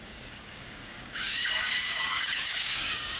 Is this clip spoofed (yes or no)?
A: yes